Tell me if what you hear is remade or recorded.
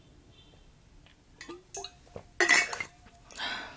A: recorded